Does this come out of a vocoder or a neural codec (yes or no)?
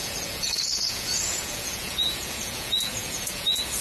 yes